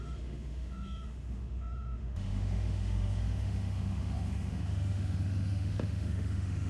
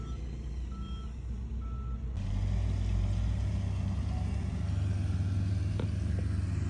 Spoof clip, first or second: first